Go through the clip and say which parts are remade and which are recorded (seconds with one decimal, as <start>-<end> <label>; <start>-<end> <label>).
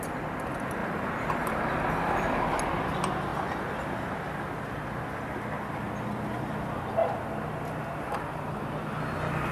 0.0-9.5 recorded